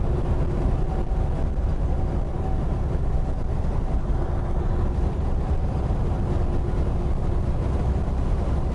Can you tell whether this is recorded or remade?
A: recorded